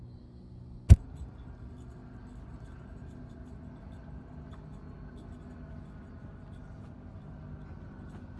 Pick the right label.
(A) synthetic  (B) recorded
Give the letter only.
B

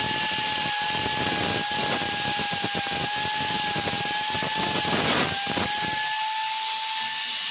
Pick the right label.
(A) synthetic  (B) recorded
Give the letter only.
B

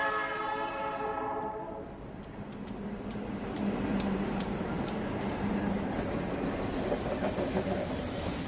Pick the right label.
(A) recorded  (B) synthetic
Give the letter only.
B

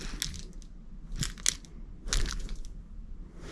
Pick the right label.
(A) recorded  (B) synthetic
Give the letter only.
A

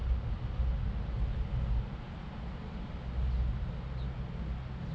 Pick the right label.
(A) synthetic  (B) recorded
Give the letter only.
B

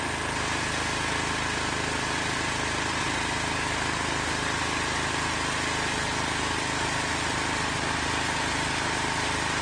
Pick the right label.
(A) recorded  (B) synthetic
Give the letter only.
A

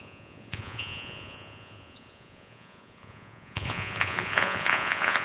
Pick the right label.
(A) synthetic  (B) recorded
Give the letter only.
A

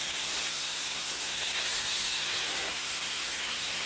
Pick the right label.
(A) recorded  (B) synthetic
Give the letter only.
B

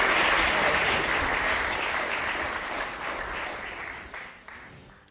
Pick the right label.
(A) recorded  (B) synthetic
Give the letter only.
A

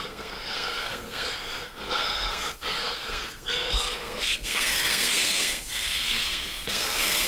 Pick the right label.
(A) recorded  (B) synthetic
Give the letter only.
B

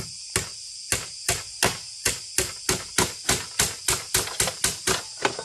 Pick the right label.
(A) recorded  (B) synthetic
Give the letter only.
A